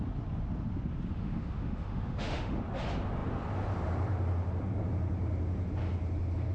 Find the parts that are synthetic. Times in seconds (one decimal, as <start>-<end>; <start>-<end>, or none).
1.1-2.6